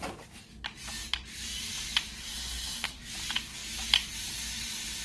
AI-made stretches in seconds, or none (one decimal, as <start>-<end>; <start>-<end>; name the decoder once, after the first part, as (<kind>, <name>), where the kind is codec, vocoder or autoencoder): 2.2-3.1 (codec, SNAC)